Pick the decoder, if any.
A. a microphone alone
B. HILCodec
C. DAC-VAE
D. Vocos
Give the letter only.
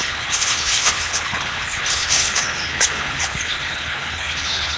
B